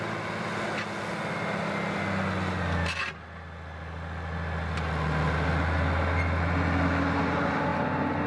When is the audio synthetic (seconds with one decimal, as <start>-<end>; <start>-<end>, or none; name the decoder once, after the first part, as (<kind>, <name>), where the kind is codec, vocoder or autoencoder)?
none